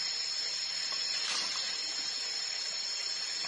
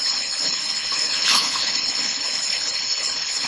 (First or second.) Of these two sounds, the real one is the first